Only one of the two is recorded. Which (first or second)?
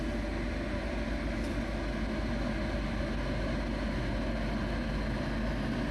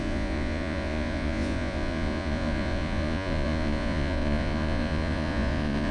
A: first